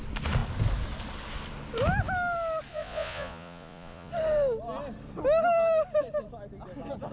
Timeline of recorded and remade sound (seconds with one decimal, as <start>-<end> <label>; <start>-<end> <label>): 0.0-2.7 recorded; 2.7-4.1 remade; 4.1-7.1 recorded